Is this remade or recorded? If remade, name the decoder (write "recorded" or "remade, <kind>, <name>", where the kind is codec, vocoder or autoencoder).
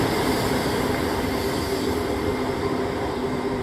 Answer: remade, vocoder, BigVGAN v2